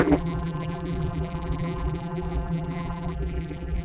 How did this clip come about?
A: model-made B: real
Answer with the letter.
A